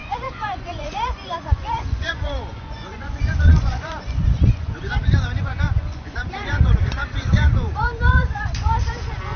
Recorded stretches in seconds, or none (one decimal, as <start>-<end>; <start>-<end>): none

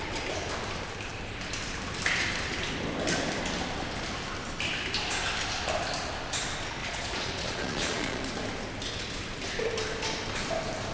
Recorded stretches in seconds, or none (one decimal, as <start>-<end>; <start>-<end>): 0.0-6.8; 8.2-10.9

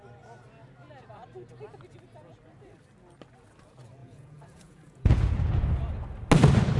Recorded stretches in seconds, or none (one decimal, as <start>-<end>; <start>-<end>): 0.0-4.0; 5.7-6.8

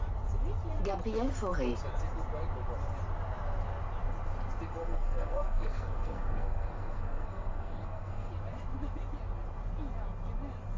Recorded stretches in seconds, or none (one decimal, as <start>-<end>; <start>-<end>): 0.0-4.8; 8.3-10.8

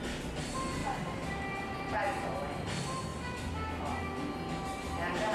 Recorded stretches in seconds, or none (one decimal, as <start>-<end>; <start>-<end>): 0.0-0.8; 1.9-5.3

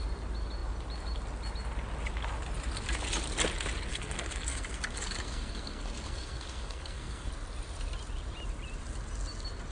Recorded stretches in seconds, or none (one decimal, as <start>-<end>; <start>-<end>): 0.0-3.9; 7.3-9.7

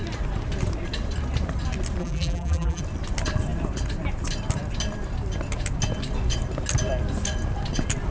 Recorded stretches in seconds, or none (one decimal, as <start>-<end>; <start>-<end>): 0.0-2.0; 2.8-8.1